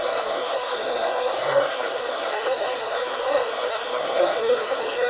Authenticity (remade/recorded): remade